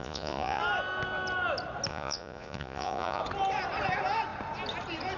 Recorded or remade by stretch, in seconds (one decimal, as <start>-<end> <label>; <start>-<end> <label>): 0.0-0.6 remade; 0.6-1.9 recorded; 1.9-3.2 remade; 3.2-5.2 recorded